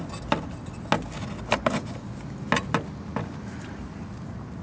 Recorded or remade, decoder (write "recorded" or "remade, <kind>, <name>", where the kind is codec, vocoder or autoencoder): recorded